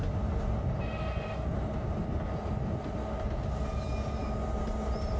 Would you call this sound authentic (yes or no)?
yes